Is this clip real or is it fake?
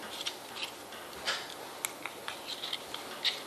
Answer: real